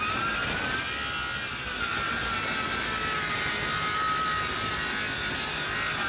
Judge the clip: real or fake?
real